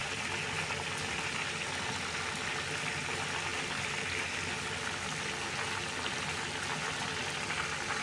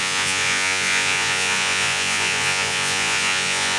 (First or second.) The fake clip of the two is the second